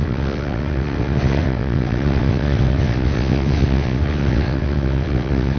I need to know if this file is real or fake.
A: fake